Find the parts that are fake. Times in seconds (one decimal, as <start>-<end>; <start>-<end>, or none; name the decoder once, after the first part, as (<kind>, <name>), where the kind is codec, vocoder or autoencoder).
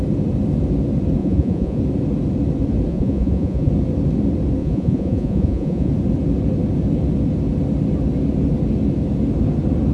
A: 1.2-1.8 (vocoder, Vocos); 2.9-3.7; 4.6-5.9